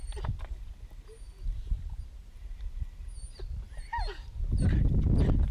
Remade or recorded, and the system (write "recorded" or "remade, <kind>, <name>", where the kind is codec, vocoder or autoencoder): recorded